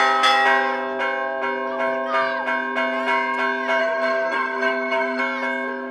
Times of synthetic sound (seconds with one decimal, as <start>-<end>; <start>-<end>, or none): 3.8-5.2